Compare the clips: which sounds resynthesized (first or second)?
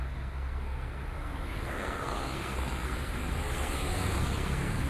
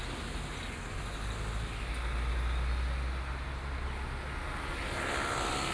first